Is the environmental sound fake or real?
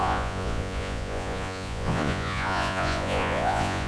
fake